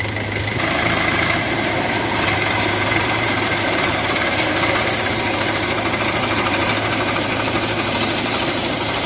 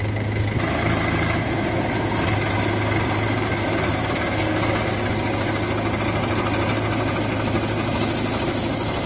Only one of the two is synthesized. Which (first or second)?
first